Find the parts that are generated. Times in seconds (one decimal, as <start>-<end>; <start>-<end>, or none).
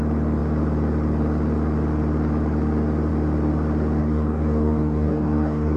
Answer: 4.0-5.8